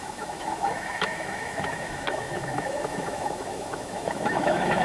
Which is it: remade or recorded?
remade